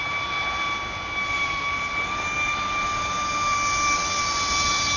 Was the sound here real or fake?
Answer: real